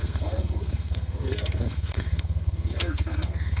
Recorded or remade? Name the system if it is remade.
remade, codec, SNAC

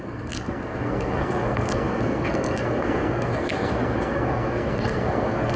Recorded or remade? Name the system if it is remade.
remade, codec, SNAC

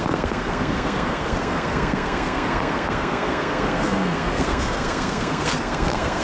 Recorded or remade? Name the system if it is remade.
remade, codec, SNAC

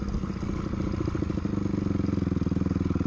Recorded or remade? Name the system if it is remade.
recorded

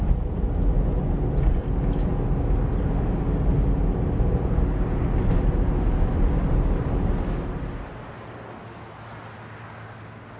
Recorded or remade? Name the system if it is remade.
recorded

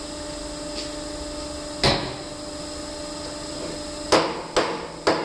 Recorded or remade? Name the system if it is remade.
recorded